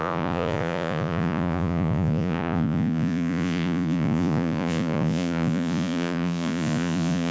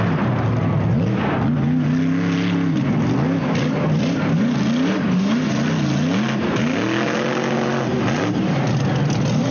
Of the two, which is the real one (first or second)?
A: second